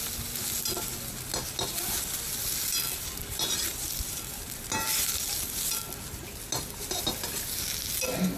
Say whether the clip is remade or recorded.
recorded